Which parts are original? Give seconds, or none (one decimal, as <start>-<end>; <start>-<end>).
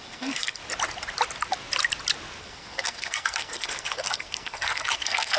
0.6-2.4